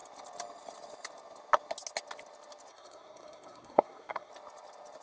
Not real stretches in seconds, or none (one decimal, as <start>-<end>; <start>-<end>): 2.7-4.3